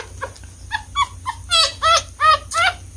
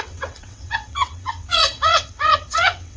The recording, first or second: first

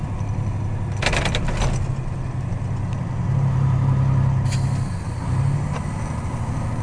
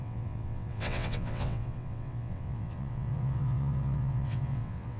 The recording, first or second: first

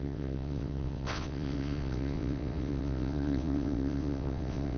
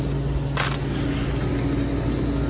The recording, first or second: second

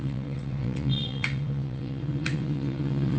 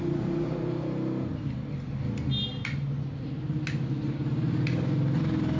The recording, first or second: second